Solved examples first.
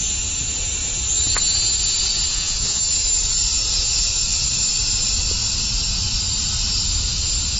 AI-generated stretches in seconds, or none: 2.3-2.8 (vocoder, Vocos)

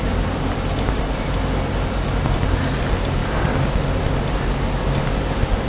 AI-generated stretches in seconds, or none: none

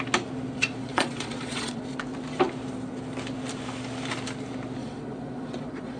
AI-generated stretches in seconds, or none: 0.8-1.8 (vocoder, Vocos); 4.8-6.0

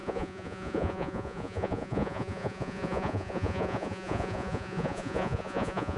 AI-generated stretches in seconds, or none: 0.0-6.0 (vocoder, Vocos)

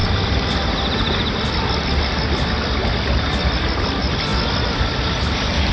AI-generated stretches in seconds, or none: none

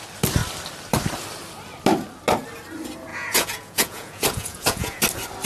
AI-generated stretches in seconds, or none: 3.1-5.0 (vocoder, Vocos)

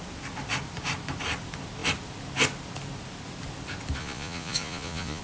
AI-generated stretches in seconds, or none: 4.0-5.2 (vocoder, Vocos)

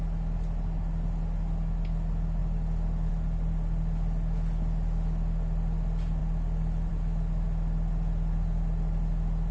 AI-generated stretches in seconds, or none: none